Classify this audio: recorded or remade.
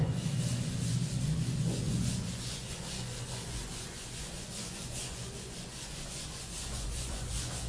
remade